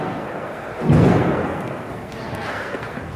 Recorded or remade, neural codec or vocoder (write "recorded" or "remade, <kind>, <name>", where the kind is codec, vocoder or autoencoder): remade, codec, SNAC